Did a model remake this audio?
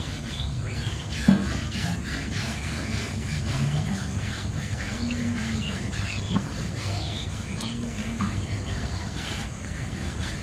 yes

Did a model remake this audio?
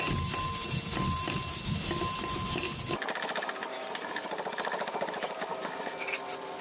no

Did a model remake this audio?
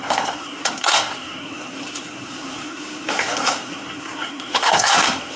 yes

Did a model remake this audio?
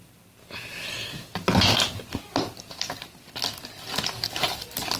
no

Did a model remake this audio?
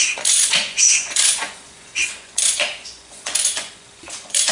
yes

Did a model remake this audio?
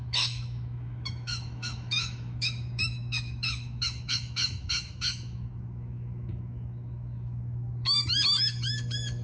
yes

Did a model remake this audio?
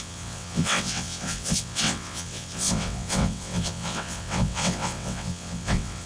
yes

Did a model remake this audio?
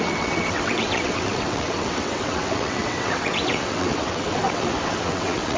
yes